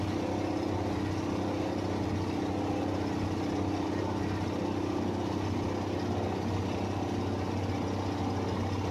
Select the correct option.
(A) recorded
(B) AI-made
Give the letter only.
A